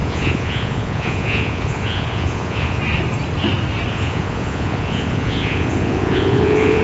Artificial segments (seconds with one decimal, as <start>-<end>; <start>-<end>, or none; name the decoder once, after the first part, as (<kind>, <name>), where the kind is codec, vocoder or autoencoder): 0.0-2.8 (vocoder, Vocos); 3.9-6.8